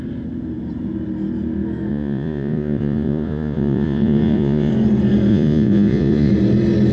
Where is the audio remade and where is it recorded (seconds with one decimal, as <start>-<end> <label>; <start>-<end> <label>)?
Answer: 0.0-1.9 recorded; 1.9-4.7 remade; 4.7-5.3 recorded; 5.3-6.3 remade; 6.3-6.9 recorded